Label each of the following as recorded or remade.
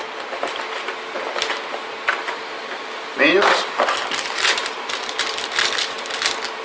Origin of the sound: recorded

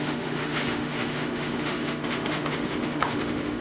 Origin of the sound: remade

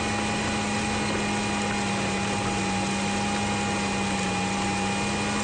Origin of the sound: recorded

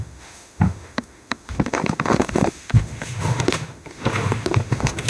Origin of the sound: remade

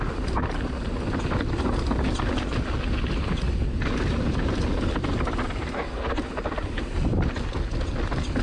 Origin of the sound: recorded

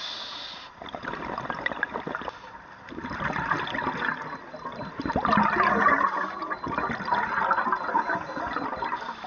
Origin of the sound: recorded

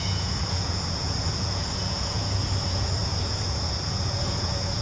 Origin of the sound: remade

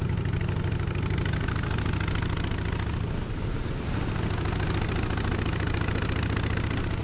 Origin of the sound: recorded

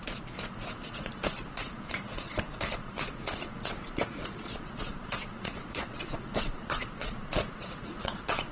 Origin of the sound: remade